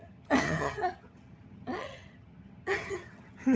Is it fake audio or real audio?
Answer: fake